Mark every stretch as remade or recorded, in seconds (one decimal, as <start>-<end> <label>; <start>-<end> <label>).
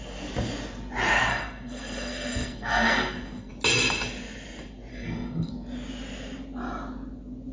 0.0-1.3 recorded; 1.3-3.5 remade; 3.5-4.9 recorded; 4.9-5.5 remade; 5.5-7.5 recorded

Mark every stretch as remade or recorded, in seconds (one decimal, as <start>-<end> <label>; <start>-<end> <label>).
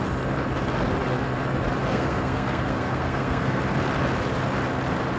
0.0-1.9 recorded; 1.9-3.6 remade; 3.6-5.2 recorded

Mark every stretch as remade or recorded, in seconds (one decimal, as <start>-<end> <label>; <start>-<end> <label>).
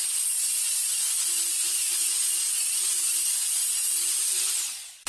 0.0-3.5 recorded; 3.5-5.1 remade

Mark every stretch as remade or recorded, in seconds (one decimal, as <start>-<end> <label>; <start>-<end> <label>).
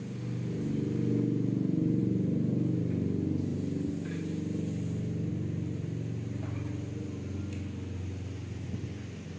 0.0-9.4 recorded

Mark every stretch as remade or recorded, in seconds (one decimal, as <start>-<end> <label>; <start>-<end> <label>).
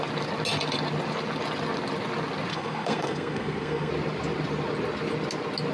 0.0-2.5 recorded; 2.5-3.9 remade; 3.9-5.7 recorded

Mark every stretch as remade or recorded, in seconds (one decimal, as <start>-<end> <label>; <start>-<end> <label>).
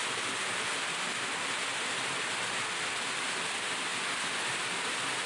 0.0-5.3 recorded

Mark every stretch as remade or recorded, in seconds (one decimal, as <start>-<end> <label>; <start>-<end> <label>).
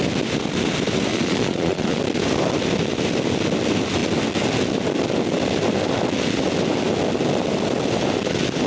0.0-1.1 recorded; 1.1-2.0 remade; 2.0-8.7 recorded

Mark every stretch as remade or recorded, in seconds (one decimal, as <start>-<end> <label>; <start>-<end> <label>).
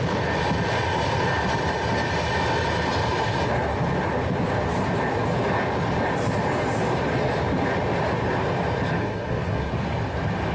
0.0-9.0 recorded; 9.0-9.7 remade; 9.7-10.5 recorded